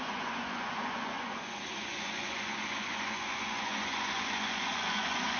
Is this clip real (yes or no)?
no